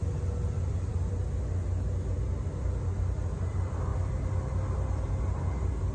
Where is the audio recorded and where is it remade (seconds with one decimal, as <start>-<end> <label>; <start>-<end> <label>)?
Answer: 0.0-5.9 recorded